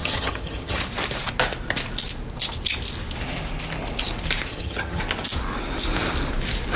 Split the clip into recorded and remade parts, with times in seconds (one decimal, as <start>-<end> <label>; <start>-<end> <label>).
0.0-0.8 remade; 0.8-4.5 recorded; 4.5-5.0 remade; 5.0-6.8 recorded